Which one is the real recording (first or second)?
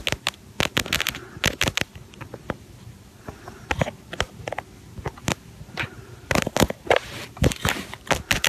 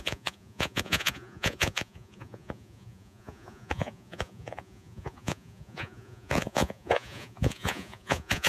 first